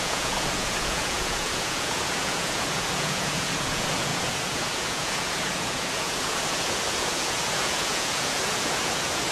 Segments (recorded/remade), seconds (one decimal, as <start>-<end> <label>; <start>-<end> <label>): 0.0-9.3 remade